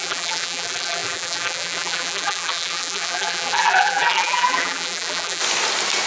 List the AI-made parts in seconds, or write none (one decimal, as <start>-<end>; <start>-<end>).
0.0-5.4